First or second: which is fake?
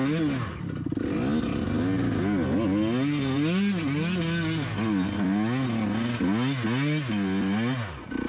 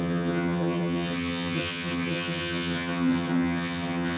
second